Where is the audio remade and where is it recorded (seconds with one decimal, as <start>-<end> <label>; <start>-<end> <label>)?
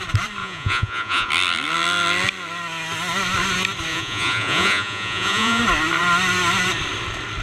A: 0.0-0.4 recorded; 0.4-1.3 remade; 1.3-3.9 recorded; 3.9-5.6 remade; 5.6-7.4 recorded